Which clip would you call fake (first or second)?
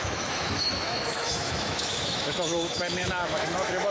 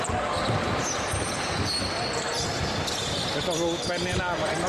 first